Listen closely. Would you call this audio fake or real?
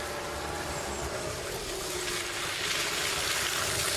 real